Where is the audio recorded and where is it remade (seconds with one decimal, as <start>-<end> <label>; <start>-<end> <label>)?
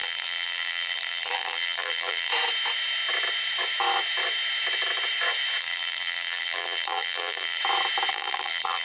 0.0-2.3 remade; 2.3-5.6 recorded; 5.6-7.6 remade; 7.6-8.1 recorded; 8.1-8.8 remade